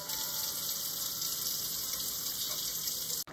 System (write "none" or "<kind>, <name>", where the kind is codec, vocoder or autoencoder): none